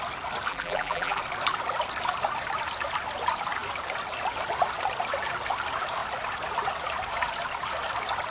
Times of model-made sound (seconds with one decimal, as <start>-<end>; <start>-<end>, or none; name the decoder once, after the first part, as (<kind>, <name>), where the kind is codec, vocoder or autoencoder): 0.5-1.2 (vocoder, BigVGAN v2)